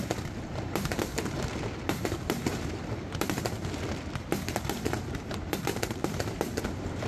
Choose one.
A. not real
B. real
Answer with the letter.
A